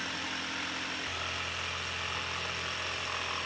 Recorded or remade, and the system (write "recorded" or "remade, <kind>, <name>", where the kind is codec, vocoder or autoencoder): recorded